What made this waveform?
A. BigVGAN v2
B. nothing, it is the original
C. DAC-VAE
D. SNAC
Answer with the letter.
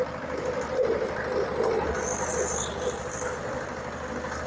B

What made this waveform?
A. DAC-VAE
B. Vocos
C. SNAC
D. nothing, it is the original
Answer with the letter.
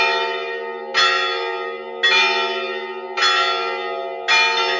D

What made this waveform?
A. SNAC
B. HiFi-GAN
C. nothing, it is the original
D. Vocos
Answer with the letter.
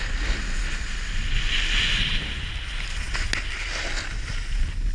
C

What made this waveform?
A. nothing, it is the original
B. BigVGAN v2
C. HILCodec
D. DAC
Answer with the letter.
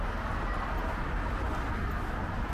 A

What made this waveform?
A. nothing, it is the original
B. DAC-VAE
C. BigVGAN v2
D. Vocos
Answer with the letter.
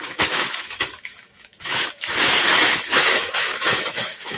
B